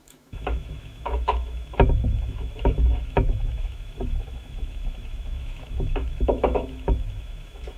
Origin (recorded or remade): remade